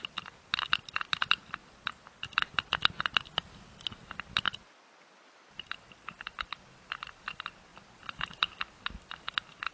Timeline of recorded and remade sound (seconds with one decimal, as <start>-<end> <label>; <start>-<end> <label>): 0.0-1.6 recorded; 1.6-2.2 remade; 2.2-5.4 recorded; 5.4-6.6 remade; 6.6-7.7 recorded; 7.7-8.6 remade; 8.6-9.7 recorded